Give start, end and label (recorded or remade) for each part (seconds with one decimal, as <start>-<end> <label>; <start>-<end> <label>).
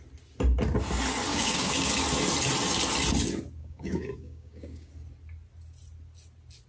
0.0-1.3 recorded; 1.3-1.9 remade; 1.9-3.6 recorded; 3.6-4.9 remade; 4.9-6.7 recorded